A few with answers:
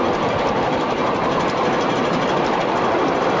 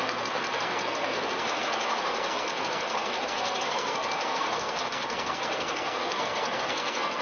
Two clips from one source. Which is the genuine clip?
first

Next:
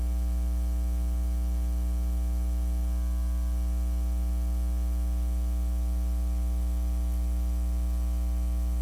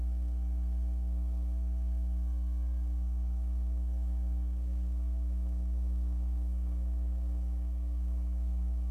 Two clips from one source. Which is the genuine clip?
first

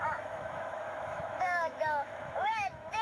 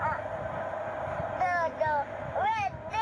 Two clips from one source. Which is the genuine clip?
second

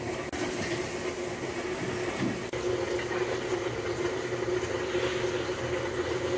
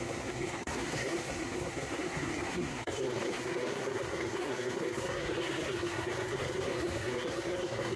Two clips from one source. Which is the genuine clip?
first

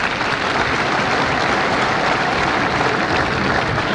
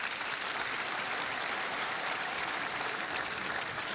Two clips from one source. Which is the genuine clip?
first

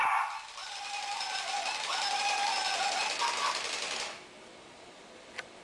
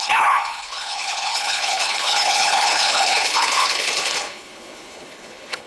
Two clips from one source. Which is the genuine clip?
first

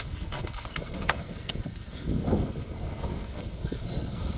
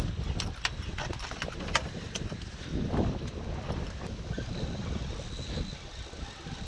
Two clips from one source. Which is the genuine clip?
second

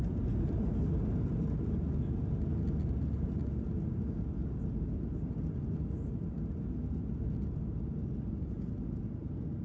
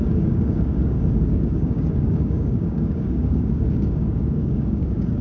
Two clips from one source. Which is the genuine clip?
first